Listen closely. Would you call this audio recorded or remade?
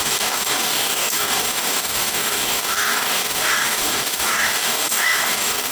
remade